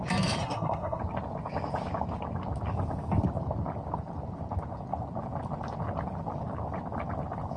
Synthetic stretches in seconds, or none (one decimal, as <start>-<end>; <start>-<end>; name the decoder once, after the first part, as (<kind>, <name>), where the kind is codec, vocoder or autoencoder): 0.4-1.0 (codec, SNAC)